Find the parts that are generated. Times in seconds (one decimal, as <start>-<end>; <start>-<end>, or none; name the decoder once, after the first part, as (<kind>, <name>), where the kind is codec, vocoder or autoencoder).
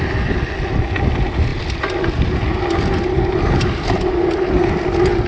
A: none